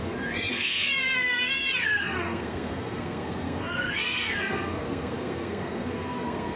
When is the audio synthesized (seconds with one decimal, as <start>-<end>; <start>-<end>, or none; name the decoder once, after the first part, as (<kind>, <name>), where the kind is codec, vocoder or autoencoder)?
0.0-6.6 (codec, SNAC)